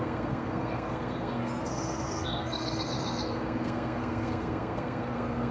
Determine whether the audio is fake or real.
fake